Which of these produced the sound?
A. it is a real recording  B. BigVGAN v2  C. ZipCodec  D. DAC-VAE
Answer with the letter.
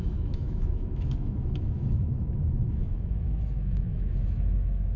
D